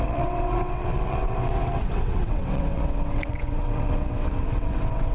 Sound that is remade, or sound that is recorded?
remade